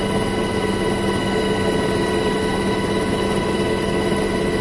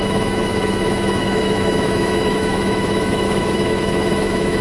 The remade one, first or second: second